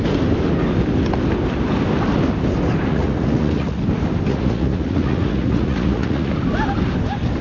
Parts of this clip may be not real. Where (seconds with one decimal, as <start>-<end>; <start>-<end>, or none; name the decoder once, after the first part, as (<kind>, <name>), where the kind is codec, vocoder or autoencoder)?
2.9-3.8 (vocoder, Vocos); 4.3-6.3